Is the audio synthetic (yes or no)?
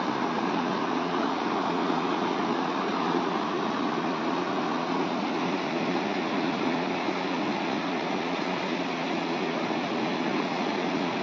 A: yes